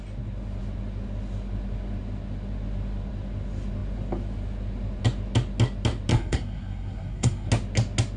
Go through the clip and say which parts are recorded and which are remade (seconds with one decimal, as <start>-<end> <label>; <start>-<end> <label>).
0.0-6.1 recorded; 6.1-7.5 remade; 7.5-8.2 recorded